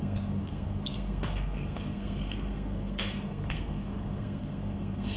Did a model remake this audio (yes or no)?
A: yes